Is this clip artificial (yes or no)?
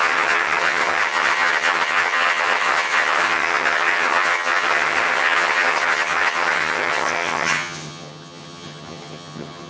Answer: yes